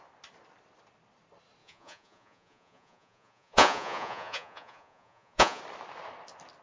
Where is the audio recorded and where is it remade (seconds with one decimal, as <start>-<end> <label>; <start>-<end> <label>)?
0.0-1.6 recorded; 1.6-5.6 remade; 5.6-6.6 recorded